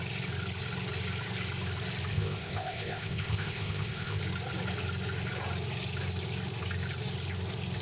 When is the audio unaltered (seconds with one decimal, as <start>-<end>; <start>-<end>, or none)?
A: 0.0-2.1; 4.2-7.8